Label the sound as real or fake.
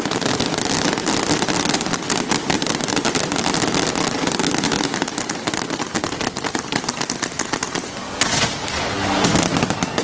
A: real